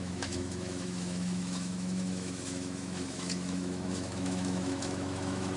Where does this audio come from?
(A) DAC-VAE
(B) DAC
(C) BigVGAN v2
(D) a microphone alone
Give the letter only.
A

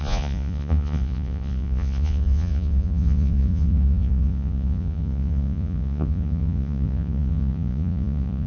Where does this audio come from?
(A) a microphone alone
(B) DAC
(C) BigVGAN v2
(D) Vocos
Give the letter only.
D